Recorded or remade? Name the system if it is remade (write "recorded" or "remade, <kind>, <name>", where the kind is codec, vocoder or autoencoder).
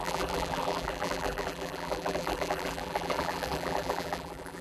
remade, vocoder, BigVGAN v2